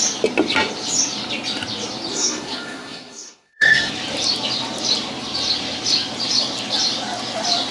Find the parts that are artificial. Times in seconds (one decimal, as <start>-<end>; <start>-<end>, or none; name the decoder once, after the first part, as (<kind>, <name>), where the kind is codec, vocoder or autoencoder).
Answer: 2.1-3.9 (codec, SNAC)